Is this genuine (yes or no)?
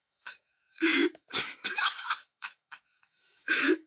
no